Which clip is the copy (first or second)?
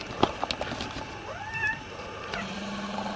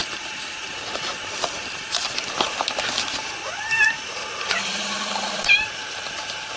second